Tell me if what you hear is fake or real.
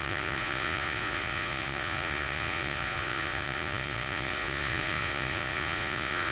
fake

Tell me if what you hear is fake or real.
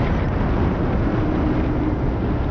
real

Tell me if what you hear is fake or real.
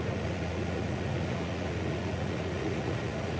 fake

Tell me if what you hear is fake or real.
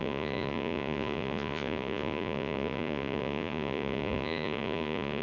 fake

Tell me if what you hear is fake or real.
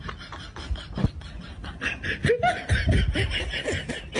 real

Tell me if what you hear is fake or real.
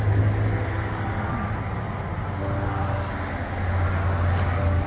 real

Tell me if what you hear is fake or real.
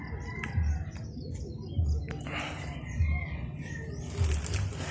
real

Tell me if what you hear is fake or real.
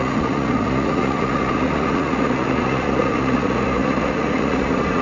fake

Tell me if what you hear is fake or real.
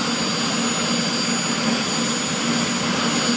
real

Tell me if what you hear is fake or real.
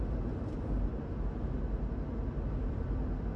real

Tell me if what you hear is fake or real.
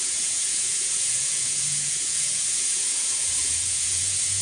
fake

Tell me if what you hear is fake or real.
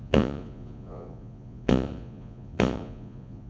fake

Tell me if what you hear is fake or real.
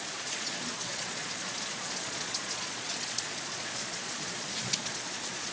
fake